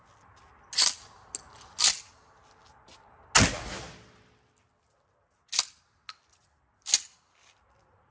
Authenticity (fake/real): real